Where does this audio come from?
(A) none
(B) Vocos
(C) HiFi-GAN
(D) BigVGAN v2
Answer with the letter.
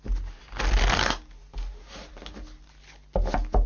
A